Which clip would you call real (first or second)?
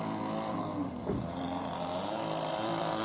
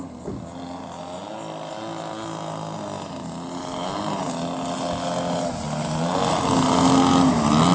second